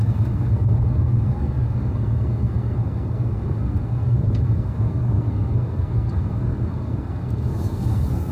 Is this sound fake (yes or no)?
yes